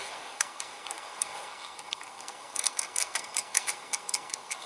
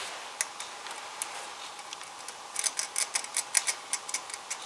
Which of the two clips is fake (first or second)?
first